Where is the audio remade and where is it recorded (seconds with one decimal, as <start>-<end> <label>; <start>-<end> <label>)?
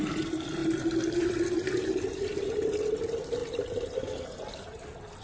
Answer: 0.0-5.2 recorded